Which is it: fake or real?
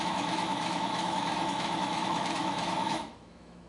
fake